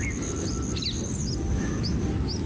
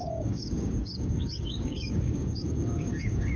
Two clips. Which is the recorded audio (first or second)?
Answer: first